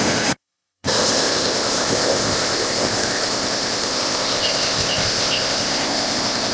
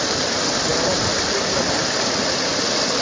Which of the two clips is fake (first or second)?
first